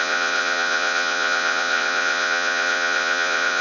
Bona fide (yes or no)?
no